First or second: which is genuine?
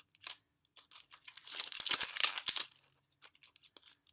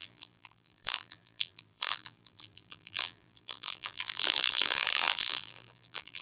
first